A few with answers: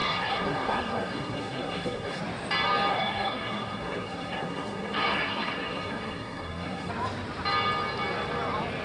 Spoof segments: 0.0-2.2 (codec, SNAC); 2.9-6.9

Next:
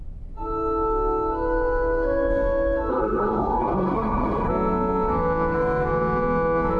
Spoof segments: 2.9-4.5 (codec, SNAC)

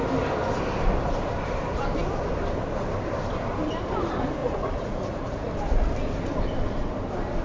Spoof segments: 4.4-5.5 (vocoder, Vocos)

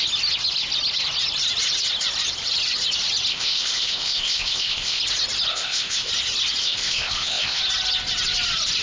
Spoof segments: 3.3-5.0 (codec, ZipCodec); 5.5-6.1; 6.6-7.6

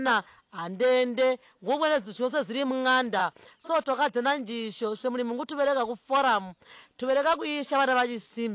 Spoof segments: 1.4-2.7 (autoencoder, DAC-VAE)

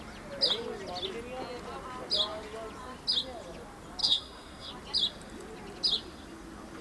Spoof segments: 4.0-4.7 (codec, SNAC)